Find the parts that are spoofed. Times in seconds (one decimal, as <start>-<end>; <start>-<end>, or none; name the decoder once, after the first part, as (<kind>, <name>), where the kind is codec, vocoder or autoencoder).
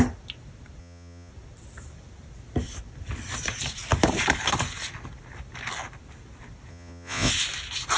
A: 0.8-1.3 (vocoder, Vocos); 6.7-7.3